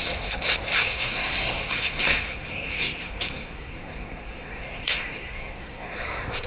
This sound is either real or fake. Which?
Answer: fake